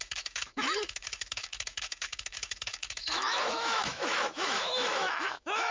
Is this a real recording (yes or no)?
no